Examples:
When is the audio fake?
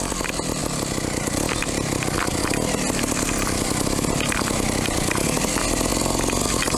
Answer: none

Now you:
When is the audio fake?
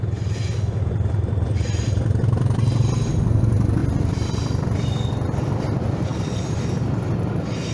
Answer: none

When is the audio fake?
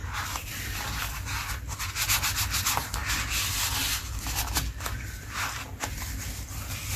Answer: none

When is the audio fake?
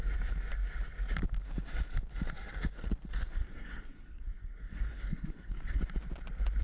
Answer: 3.4-5.8 (codec, SNAC)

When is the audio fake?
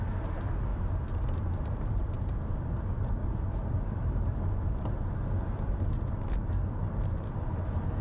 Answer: 0.7-2.4 (vocoder, BigVGAN v2); 3.2-4.9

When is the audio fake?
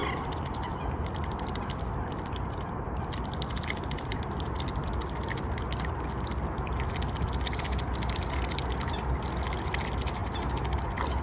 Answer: 0.0-4.9 (vocoder, BigVGAN v2); 10.2-11.2